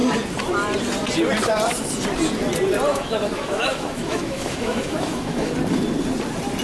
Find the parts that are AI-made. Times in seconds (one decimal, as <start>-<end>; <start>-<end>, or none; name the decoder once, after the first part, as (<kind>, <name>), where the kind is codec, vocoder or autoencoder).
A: 2.9-5.5 (autoencoder, DAC-VAE)